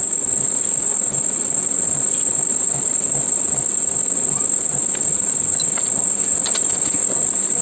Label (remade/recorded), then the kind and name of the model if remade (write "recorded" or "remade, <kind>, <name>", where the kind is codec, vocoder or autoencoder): recorded